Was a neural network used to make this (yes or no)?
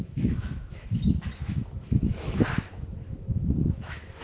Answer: yes